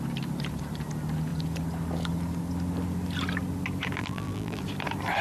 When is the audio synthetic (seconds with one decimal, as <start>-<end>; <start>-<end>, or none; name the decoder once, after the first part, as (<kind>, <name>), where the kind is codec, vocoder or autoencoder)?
4.0-4.6 (vocoder, BigVGAN v2)